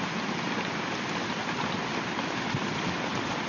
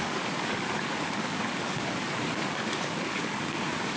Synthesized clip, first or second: second